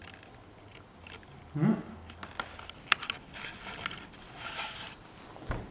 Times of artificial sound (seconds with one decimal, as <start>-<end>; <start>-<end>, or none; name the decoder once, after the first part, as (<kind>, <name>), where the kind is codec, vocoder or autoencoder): none